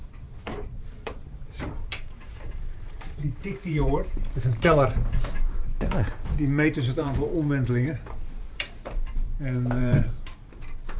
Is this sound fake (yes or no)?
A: yes